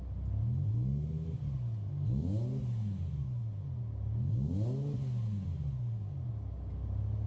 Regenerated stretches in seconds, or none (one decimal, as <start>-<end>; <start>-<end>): none